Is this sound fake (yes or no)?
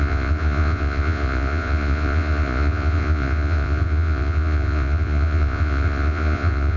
yes